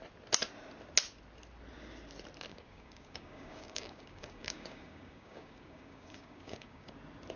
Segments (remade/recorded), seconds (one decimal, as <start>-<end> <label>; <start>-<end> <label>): 0.0-2.5 recorded; 2.5-6.9 remade; 6.9-7.4 recorded